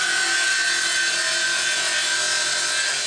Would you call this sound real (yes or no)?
yes